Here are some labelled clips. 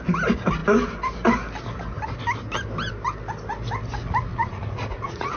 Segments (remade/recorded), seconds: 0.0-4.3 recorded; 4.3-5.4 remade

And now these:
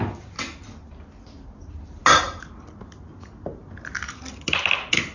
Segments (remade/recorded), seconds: 0.0-5.1 recorded

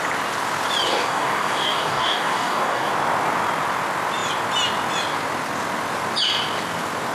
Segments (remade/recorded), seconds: 0.0-0.9 recorded; 0.9-2.9 remade; 2.9-7.1 recorded

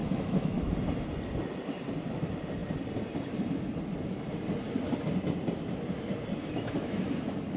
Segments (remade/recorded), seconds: 0.0-0.6 remade; 0.6-6.4 recorded; 6.4-7.1 remade; 7.1-7.6 recorded

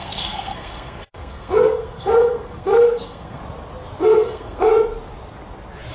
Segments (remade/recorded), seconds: 0.0-3.4 remade; 3.4-4.0 recorded; 4.0-4.7 remade; 4.7-5.9 recorded